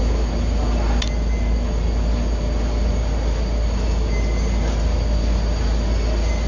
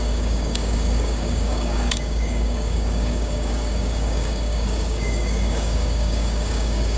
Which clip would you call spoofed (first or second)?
second